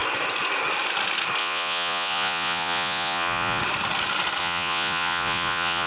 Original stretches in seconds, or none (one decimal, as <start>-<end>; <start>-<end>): 0.0-1.4; 3.6-4.4